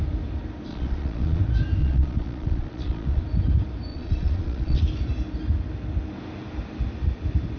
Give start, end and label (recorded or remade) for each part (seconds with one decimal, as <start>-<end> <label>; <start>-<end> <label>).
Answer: 0.0-0.7 recorded; 0.7-1.4 remade; 1.4-1.8 recorded; 1.8-3.2 remade; 3.2-3.9 recorded; 3.9-4.8 remade; 4.8-7.6 recorded